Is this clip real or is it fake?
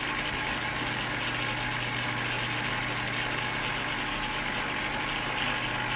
real